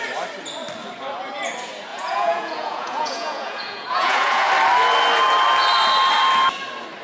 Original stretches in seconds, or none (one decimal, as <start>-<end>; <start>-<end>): 0.0-1.9; 4.5-7.0